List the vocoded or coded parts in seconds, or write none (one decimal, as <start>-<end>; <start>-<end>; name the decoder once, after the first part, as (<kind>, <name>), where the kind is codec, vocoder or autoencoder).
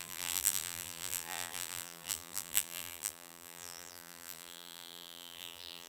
0.0-5.9 (vocoder, BigVGAN v2)